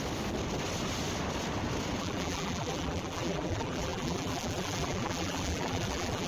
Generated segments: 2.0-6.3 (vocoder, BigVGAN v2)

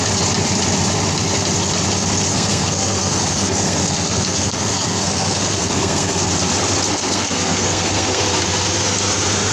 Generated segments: 2.3-6.3 (codec, SNAC); 6.9-8.2